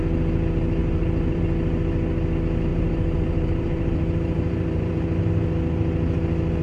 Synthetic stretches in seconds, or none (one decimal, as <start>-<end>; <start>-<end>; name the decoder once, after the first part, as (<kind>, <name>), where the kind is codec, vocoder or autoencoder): 0.8-1.4 (vocoder, BigVGAN v2); 2.7-5.2